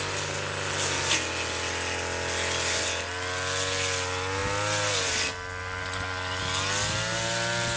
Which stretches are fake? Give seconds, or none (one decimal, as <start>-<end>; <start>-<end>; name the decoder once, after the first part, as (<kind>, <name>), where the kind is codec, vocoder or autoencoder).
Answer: none